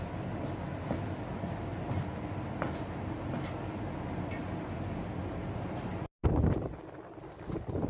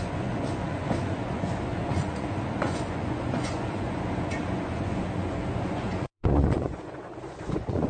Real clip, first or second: first